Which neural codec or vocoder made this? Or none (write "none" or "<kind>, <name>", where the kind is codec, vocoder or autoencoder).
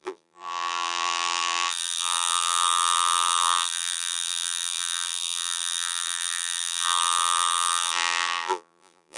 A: vocoder, BigVGAN v2